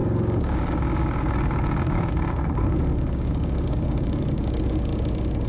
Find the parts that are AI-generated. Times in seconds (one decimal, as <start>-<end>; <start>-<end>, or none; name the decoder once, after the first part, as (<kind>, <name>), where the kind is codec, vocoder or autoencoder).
0.0-4.9 (codec, DAC)